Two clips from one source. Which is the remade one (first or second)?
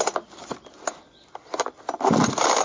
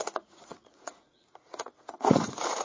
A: second